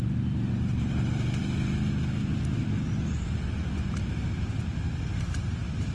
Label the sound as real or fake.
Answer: real